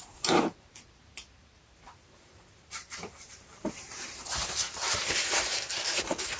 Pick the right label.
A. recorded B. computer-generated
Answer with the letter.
B